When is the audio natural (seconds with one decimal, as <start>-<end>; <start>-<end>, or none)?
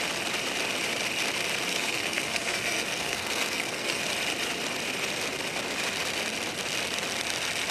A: 0.0-1.7; 4.0-7.7